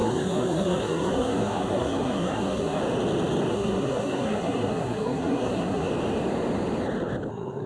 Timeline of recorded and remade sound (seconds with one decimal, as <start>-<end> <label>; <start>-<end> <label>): 0.0-2.8 remade; 2.8-3.5 recorded; 3.5-5.9 remade; 5.9-7.3 recorded; 7.3-7.7 remade